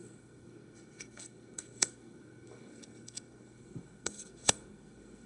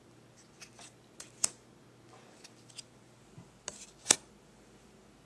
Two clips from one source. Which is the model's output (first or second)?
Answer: first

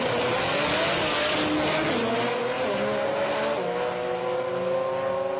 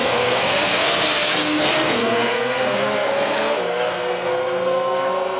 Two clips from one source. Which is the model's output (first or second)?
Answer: second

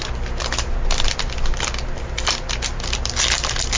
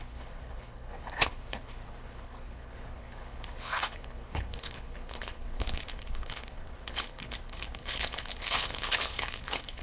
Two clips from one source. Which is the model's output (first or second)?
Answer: second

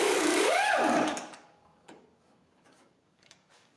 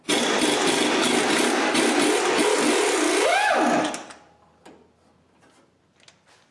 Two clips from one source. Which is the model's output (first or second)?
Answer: first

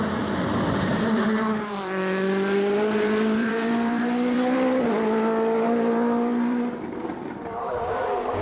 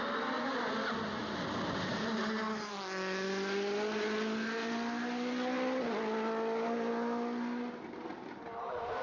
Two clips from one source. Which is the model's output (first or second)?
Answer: first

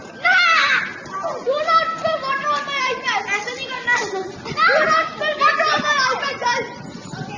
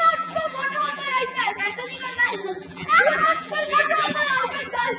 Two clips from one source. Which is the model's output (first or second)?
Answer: second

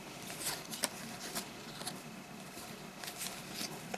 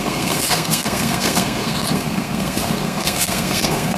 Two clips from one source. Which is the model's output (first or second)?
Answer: second